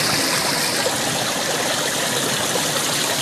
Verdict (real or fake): real